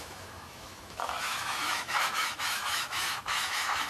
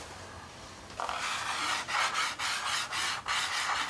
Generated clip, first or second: first